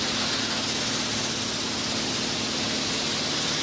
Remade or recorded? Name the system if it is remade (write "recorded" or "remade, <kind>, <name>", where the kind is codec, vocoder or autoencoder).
recorded